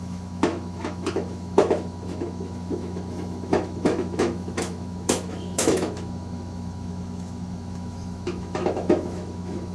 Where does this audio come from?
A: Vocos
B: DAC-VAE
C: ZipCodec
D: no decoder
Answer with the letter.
B